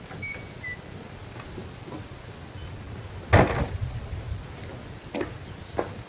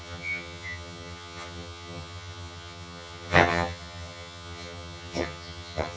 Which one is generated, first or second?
second